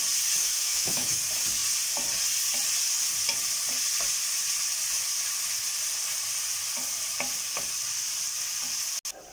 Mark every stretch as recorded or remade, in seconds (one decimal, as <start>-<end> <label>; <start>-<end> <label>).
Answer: 0.0-0.4 recorded; 0.4-1.2 remade; 1.2-9.3 recorded